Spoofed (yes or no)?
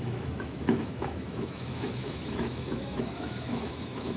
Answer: yes